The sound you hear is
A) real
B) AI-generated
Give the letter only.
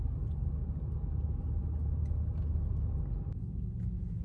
A